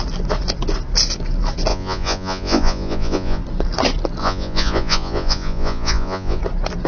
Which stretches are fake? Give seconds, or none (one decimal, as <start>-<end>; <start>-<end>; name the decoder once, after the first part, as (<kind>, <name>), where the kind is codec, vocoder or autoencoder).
1.7-3.4 (vocoder, Vocos); 4.2-6.4